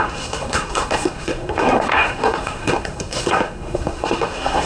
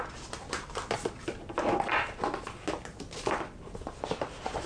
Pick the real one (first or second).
second